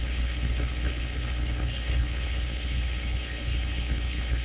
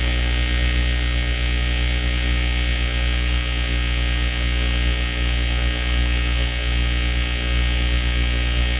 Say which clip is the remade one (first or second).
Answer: first